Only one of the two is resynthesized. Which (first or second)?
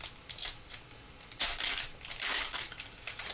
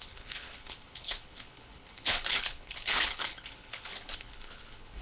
second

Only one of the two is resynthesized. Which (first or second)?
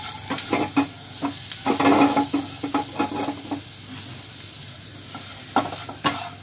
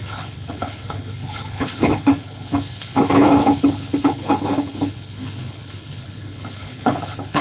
second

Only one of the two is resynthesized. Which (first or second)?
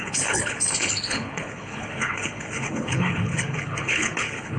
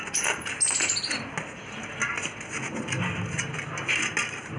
first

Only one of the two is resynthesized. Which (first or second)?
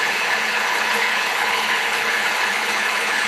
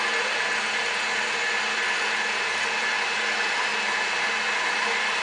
first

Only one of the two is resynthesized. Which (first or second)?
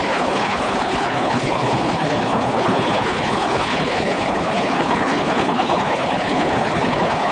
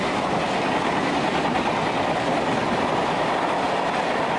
first